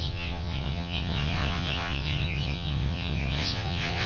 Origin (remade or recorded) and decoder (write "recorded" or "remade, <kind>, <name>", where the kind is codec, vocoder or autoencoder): remade, vocoder, WaveNeXt